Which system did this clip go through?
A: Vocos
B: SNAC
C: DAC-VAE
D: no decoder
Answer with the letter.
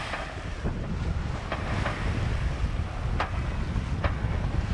D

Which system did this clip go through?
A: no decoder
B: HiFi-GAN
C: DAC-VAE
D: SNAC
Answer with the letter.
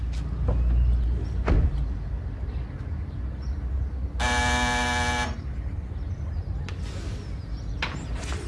A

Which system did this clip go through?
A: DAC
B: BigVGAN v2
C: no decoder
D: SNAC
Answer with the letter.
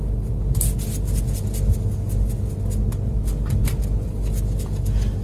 C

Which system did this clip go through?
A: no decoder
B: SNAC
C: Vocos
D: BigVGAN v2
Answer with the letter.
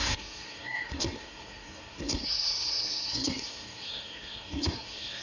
B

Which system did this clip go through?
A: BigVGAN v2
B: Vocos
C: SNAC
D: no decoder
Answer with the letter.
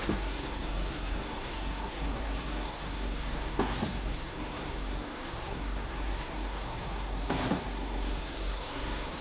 C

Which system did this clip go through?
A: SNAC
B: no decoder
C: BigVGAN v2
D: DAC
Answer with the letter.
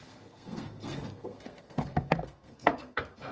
A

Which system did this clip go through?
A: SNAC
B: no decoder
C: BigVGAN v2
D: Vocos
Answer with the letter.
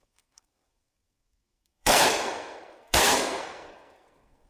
A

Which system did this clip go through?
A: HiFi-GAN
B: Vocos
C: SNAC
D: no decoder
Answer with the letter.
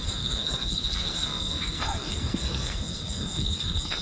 C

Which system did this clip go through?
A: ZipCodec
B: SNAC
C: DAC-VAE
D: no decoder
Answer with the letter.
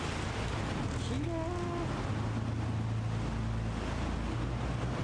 D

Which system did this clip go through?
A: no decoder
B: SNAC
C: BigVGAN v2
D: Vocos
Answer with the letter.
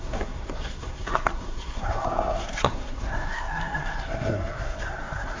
B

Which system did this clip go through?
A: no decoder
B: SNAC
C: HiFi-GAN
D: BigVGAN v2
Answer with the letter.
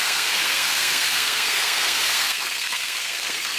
B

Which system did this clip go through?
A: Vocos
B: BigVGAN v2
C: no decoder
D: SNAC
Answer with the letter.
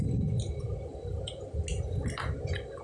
C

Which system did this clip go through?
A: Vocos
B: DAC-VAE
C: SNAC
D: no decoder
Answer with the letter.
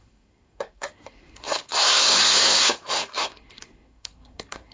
C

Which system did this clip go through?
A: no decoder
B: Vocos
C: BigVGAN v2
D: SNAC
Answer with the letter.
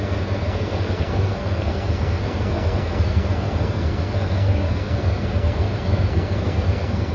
D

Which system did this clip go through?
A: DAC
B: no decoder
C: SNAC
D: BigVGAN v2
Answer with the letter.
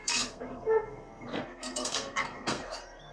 C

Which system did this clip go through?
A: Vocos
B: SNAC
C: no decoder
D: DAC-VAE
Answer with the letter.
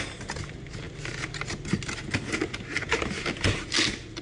C